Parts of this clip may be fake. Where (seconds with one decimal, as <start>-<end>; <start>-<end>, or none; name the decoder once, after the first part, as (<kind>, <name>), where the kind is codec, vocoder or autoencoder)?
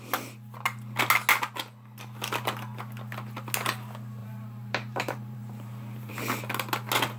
4.2-6.1 (vocoder, BigVGAN v2)